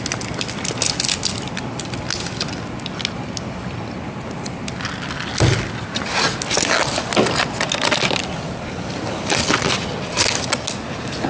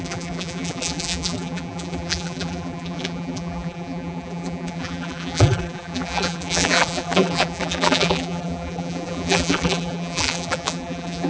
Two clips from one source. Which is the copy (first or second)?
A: second